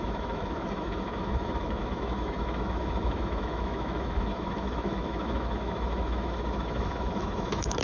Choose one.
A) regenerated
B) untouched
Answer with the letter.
A